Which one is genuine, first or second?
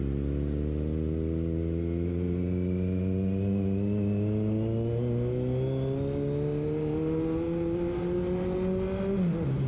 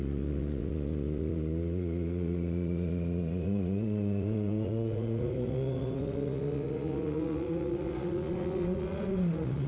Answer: first